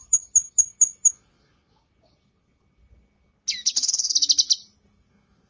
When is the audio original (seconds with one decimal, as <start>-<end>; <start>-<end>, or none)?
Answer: 0.0-1.1; 1.8-5.1